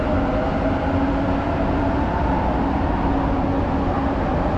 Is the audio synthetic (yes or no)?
no